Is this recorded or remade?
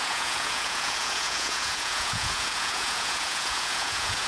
remade